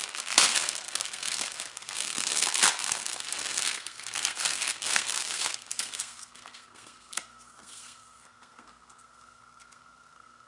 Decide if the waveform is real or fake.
fake